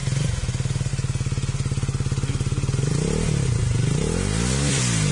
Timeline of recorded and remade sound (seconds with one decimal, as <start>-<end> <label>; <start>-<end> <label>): 0.0-5.1 recorded